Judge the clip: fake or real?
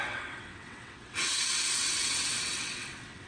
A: fake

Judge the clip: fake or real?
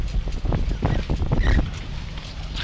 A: real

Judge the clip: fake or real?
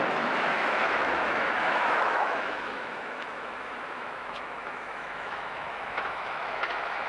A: fake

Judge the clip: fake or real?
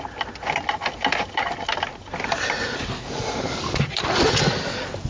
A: real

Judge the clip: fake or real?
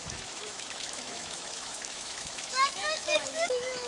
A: fake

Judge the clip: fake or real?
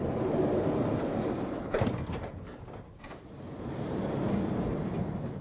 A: fake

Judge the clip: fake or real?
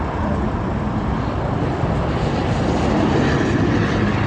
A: fake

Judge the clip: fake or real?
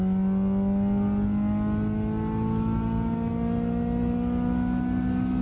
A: real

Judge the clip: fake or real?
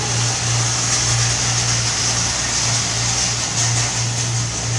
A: real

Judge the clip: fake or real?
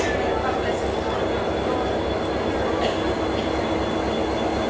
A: real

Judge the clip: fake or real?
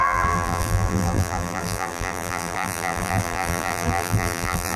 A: fake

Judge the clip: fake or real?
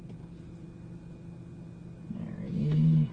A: real